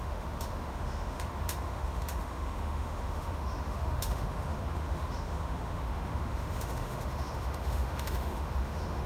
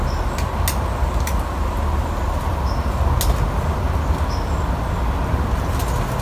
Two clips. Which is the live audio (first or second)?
second